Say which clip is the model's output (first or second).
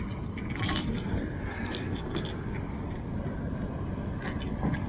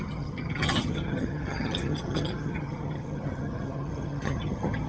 second